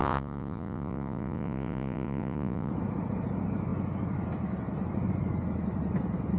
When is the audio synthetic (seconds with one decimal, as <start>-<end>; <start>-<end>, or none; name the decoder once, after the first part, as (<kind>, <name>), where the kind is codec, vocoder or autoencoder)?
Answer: 0.0-2.7 (vocoder, Vocos)